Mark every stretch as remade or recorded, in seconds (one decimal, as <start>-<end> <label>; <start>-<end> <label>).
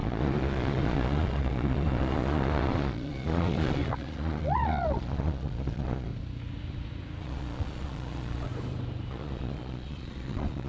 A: 0.0-6.1 remade; 6.1-7.2 recorded; 7.2-8.5 remade; 8.5-9.1 recorded; 9.1-10.7 remade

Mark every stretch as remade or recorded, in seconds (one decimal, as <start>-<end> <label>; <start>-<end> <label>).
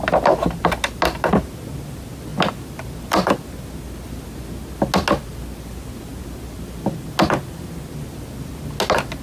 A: 0.0-9.2 recorded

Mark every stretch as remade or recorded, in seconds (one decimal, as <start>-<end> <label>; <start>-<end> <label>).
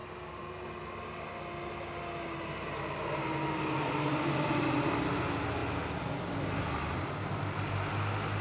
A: 0.0-8.4 recorded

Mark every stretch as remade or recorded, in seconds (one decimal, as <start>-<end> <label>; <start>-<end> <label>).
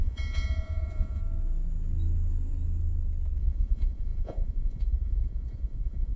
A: 0.0-1.2 remade; 1.2-3.4 recorded; 3.4-6.2 remade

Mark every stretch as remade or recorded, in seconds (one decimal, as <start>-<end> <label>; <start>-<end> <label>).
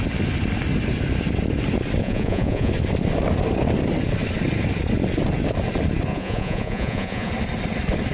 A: 0.0-2.0 recorded; 2.0-2.7 remade; 2.7-6.1 recorded; 6.1-7.3 remade; 7.3-8.1 recorded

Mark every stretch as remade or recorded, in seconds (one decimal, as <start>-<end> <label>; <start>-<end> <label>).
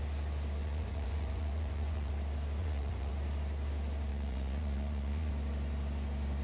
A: 0.0-0.6 recorded; 0.6-2.1 remade; 2.1-2.6 recorded; 2.6-3.1 remade; 3.1-4.1 recorded; 4.1-5.3 remade; 5.3-6.4 recorded